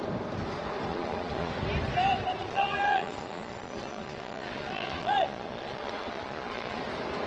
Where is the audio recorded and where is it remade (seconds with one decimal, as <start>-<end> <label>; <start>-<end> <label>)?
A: 0.0-0.9 recorded; 0.9-1.5 remade; 1.5-2.4 recorded; 2.4-6.8 remade; 6.8-7.3 recorded